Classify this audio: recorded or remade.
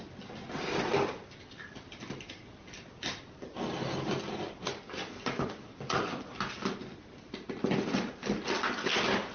recorded